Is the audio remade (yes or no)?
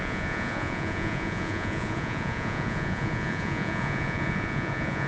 yes